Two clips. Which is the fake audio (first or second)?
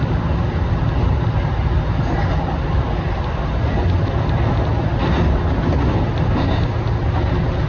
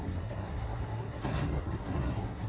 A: second